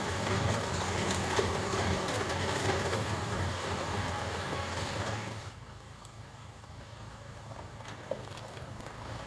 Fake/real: fake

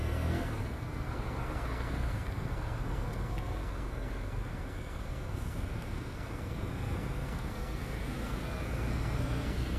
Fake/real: fake